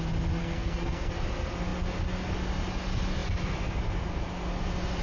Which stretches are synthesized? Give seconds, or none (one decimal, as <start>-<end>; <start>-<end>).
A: 0.4-1.1